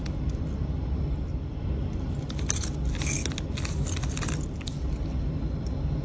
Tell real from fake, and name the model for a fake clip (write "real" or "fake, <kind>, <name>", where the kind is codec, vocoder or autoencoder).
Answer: real